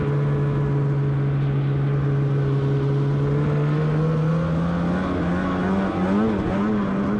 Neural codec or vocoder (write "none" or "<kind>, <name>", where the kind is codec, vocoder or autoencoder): none